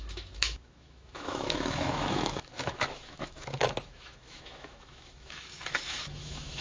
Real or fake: fake